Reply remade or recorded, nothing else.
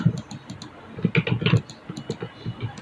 recorded